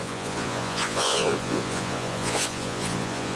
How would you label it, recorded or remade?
remade